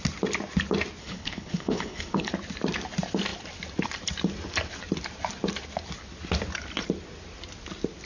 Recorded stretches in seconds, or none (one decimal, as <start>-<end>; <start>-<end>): 0.0-1.0; 2.3-8.1